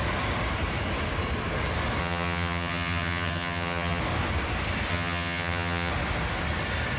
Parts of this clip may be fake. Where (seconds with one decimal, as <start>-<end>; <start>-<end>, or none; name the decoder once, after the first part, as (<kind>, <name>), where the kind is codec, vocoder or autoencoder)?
2.0-4.0 (vocoder, HiFi-GAN); 4.9-5.9